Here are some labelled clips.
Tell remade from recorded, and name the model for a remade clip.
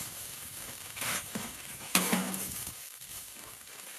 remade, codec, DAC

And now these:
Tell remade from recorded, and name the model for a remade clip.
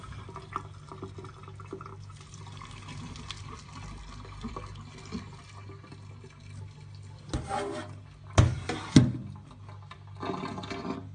recorded